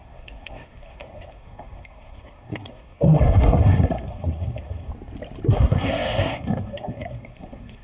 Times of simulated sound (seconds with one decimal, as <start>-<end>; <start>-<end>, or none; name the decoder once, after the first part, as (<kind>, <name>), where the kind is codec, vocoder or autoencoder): 0.0-4.9 (codec, SNAC); 5.5-7.8